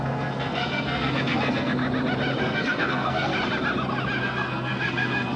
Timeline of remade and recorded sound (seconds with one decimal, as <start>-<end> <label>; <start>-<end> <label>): 0.0-1.8 remade; 1.8-2.4 recorded; 2.4-3.3 remade; 3.3-4.2 recorded; 4.2-5.4 remade